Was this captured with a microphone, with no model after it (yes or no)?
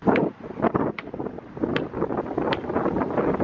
yes